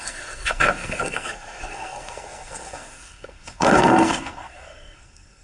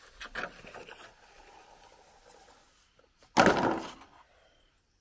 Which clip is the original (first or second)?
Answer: second